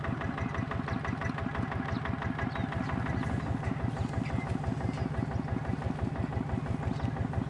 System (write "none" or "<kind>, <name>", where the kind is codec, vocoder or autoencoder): none